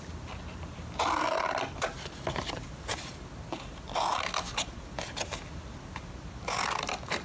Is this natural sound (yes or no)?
yes